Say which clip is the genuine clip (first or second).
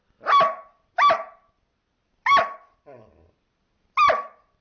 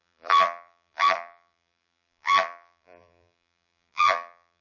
first